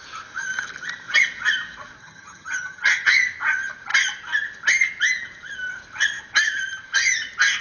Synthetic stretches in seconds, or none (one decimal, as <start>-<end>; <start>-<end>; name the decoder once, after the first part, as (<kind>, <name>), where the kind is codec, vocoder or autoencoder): 2.0-3.1 (vocoder, HiFi-GAN)

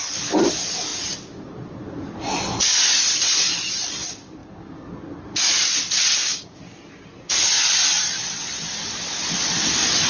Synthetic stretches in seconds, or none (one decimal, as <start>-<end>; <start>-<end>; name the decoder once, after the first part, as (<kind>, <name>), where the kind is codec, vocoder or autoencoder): 6.2-6.8 (codec, DAC)